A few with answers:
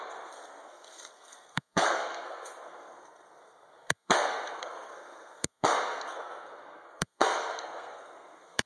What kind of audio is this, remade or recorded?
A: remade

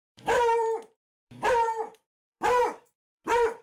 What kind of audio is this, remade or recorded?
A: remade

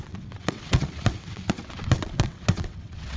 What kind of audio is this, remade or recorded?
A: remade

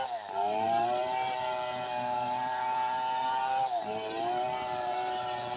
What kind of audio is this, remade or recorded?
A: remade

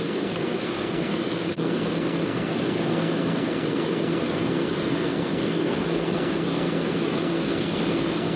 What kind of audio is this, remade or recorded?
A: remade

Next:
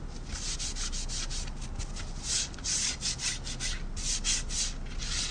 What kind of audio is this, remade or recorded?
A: recorded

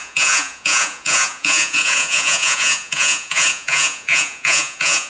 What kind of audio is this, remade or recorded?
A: remade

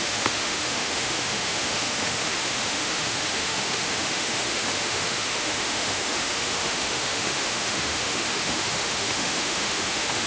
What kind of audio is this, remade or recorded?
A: remade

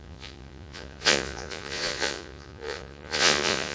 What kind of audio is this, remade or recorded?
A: remade